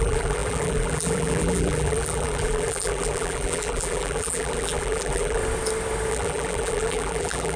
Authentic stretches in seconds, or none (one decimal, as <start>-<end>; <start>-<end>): 5.4-6.1